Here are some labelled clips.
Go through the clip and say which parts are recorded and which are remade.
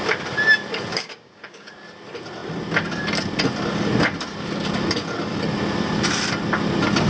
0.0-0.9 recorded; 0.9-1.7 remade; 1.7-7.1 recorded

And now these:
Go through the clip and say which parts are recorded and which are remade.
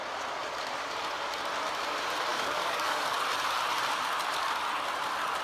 0.0-2.3 recorded; 2.3-3.2 remade; 3.2-5.4 recorded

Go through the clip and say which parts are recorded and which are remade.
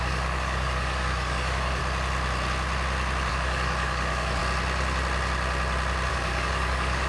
0.0-1.8 remade; 1.8-3.3 recorded; 3.3-4.4 remade; 4.4-6.1 recorded; 6.1-7.1 remade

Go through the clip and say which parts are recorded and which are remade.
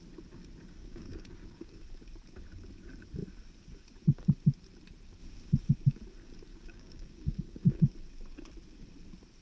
0.0-0.8 recorded; 0.8-1.8 remade; 1.8-6.5 recorded; 6.5-7.8 remade; 7.8-9.4 recorded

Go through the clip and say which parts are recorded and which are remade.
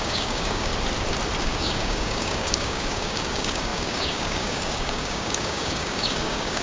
0.0-0.7 remade; 0.7-1.4 recorded; 1.4-6.6 remade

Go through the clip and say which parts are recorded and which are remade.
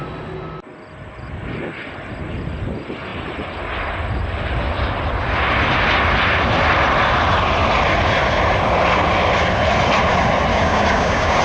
0.0-10.5 recorded; 10.5-11.4 remade